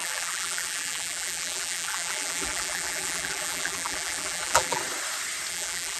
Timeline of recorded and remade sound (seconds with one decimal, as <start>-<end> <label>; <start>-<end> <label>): 0.0-4.8 remade; 4.8-5.5 recorded; 5.5-6.0 remade